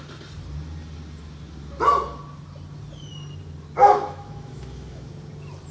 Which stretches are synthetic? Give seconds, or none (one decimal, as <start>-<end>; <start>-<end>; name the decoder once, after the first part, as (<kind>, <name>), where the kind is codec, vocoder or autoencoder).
3.8-5.1 (autoencoder, DAC-VAE)